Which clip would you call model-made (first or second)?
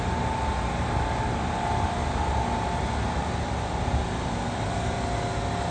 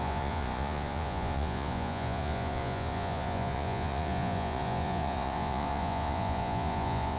second